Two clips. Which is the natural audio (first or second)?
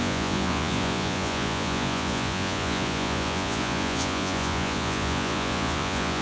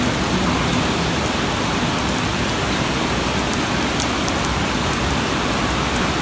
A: second